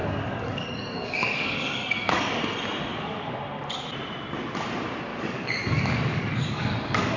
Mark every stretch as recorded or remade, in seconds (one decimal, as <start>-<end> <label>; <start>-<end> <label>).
0.0-2.4 remade; 2.4-2.9 recorded; 2.9-3.4 remade; 3.4-5.1 recorded; 5.1-7.2 remade